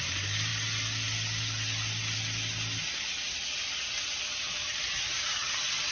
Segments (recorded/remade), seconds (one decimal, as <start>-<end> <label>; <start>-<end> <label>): 0.0-5.9 recorded